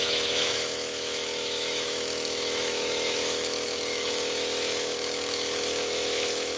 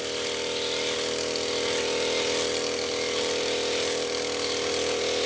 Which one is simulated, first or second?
first